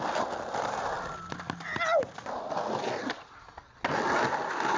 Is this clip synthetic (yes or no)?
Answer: no